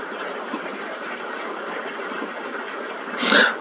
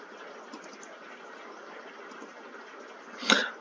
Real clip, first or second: second